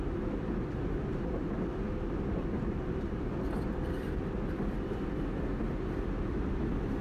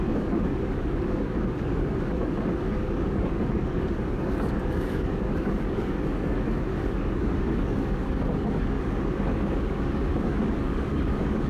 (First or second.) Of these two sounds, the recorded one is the first